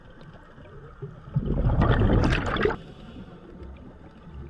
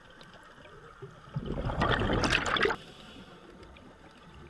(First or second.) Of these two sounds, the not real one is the second